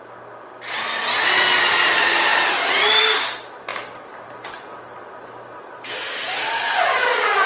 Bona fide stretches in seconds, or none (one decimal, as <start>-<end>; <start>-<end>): 0.0-7.5